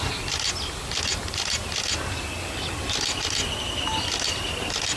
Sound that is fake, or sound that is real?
real